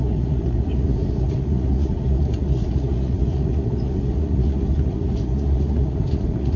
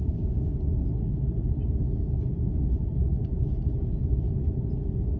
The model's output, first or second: first